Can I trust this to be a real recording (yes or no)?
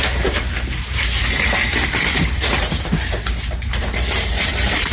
no